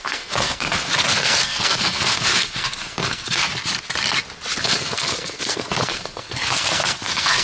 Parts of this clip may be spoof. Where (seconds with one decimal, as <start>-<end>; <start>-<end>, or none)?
0.0-3.5; 4.6-7.4